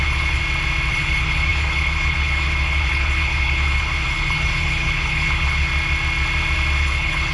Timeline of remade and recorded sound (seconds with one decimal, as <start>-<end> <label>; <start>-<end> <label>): 0.0-0.4 remade; 0.4-0.9 recorded; 0.9-5.7 remade; 5.7-6.8 recorded; 6.8-7.3 remade